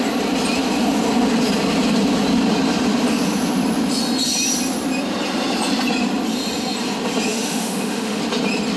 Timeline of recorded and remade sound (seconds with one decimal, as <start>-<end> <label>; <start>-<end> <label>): 0.0-7.3 recorded; 7.3-8.2 remade; 8.2-8.8 recorded